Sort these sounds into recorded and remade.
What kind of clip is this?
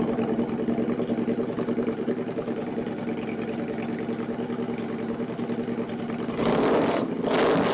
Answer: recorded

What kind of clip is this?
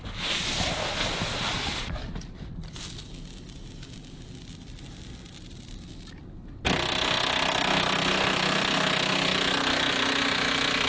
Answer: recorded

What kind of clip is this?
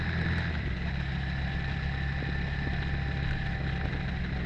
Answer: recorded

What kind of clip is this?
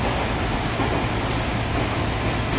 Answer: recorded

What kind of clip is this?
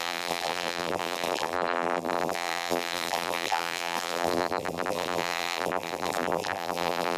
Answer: remade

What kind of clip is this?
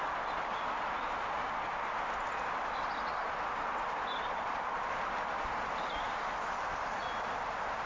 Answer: recorded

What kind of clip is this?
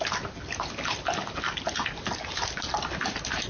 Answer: recorded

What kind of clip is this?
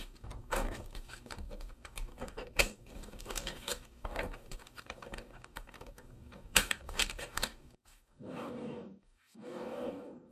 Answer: remade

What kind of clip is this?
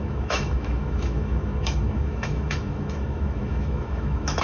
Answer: remade